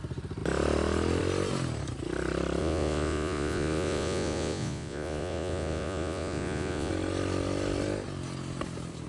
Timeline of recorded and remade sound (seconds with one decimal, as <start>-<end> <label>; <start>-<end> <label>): 0.0-2.6 recorded; 2.6-6.9 remade; 6.9-9.1 recorded